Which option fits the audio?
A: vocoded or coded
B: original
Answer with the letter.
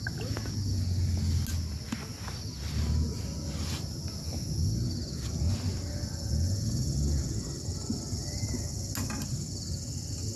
B